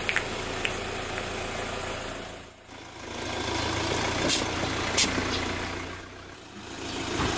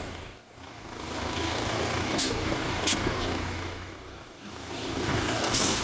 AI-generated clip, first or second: second